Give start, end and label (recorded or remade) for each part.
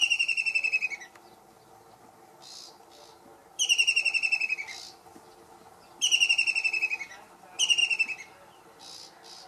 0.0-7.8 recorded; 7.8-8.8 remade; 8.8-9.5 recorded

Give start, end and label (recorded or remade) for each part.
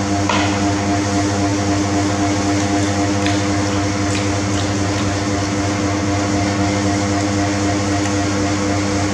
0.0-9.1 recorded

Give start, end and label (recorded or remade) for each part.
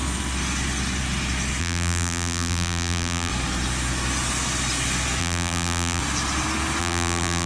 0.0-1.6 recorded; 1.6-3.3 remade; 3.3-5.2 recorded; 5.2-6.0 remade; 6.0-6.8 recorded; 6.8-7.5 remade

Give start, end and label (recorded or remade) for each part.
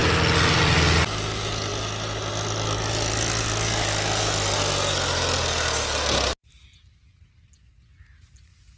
0.0-8.8 recorded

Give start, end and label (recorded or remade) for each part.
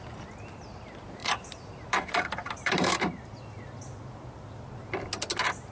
0.0-1.2 recorded; 1.2-3.4 remade; 3.4-5.7 recorded